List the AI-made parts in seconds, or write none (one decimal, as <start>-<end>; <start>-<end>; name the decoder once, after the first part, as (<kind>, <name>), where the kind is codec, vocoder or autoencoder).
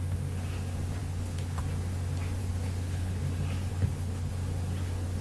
1.0-1.6 (codec, HILCodec); 2.4-3.2; 3.7-4.3